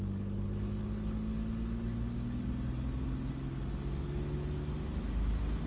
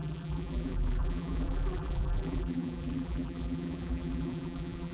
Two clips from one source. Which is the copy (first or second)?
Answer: second